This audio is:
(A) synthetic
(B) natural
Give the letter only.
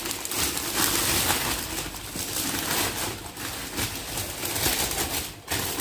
B